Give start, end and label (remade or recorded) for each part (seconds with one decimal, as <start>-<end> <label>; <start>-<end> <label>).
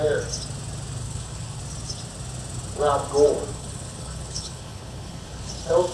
0.0-1.0 recorded; 1.0-1.6 remade; 1.6-3.5 recorded; 3.5-5.5 remade; 5.5-5.9 recorded